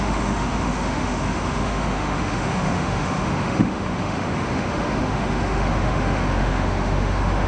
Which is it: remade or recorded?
remade